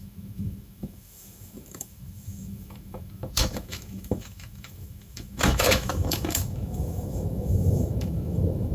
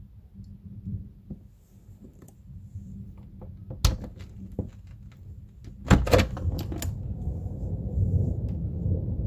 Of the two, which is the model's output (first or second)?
first